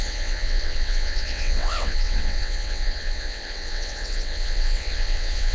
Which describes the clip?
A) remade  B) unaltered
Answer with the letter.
A